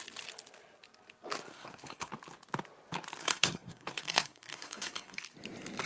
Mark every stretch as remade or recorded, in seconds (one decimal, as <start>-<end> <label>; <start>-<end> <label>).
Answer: 0.0-1.5 recorded; 1.5-2.1 remade; 2.1-3.2 recorded; 3.2-5.2 remade; 5.2-5.9 recorded